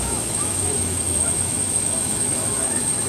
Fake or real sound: fake